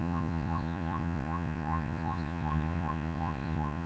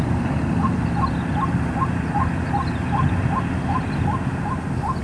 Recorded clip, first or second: second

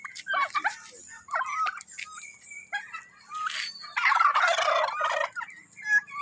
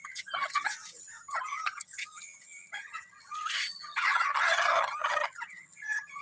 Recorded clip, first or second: first